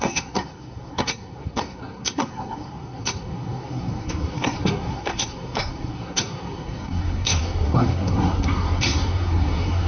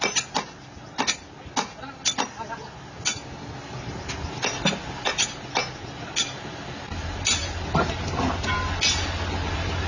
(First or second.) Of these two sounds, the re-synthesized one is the first